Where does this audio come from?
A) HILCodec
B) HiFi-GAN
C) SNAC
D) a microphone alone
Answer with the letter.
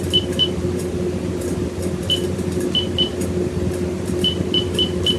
D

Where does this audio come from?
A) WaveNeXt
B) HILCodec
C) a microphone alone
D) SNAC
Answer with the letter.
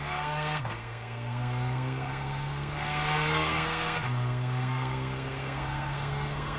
D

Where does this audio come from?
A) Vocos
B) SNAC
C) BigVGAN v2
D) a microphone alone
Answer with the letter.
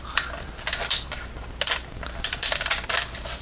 D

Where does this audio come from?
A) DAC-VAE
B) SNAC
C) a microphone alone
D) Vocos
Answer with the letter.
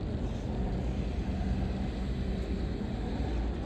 C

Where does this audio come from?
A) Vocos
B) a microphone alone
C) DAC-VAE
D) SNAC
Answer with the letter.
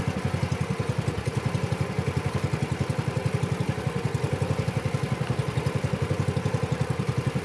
B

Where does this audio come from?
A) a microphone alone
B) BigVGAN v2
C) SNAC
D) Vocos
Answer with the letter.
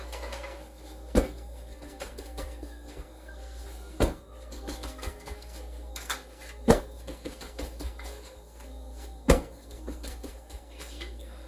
C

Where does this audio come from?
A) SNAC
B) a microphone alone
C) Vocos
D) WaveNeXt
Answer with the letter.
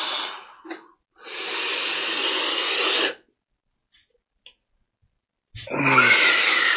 B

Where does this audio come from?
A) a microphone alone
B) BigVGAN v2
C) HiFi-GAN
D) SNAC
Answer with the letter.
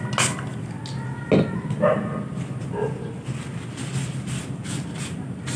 A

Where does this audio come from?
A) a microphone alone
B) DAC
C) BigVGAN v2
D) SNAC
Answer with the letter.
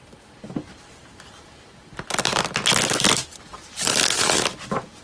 A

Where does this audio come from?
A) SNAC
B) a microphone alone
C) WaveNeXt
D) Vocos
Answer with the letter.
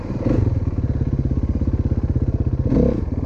B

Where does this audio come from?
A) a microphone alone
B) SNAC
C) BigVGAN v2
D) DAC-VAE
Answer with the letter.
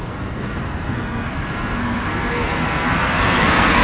B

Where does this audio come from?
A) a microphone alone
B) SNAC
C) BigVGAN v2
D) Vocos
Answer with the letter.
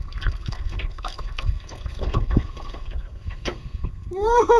B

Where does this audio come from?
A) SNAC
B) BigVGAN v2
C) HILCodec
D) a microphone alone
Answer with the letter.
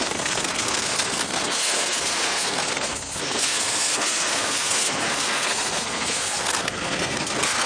A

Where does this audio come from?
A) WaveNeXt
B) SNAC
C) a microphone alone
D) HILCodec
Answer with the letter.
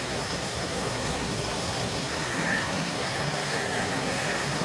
B